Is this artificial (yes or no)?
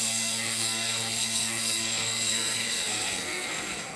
yes